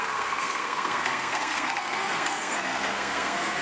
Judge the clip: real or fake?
fake